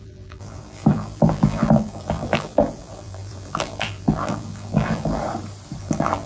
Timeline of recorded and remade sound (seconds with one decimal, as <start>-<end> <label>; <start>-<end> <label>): 0.0-5.2 remade; 5.2-5.8 recorded; 5.8-6.3 remade